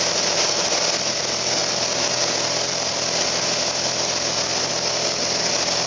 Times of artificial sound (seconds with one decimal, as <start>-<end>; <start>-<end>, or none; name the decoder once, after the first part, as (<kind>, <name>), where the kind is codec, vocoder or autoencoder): none